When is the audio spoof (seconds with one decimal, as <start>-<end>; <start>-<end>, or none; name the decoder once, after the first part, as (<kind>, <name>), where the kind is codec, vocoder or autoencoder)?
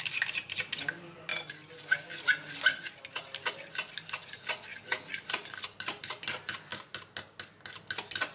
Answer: 1.3-3.5 (vocoder, BigVGAN v2); 4.7-6.0